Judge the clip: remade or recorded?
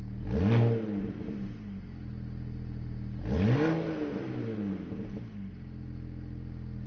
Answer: recorded